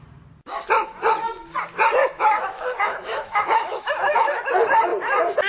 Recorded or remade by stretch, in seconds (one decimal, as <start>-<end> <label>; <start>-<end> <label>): 0.0-2.0 recorded; 2.0-4.5 remade; 4.5-5.5 recorded